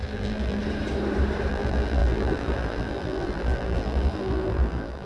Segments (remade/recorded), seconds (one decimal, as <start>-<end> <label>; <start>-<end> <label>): 0.0-0.6 remade; 0.6-1.5 recorded; 1.5-5.1 remade